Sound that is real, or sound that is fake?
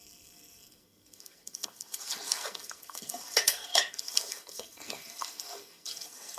fake